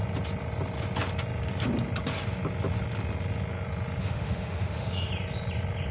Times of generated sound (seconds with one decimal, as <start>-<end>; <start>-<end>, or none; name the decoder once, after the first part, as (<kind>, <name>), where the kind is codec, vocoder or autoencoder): 4.0-5.1 (autoencoder, DAC-VAE)